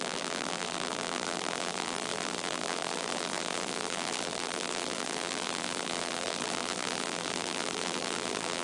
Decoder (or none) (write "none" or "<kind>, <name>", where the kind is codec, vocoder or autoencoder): vocoder, BigVGAN v2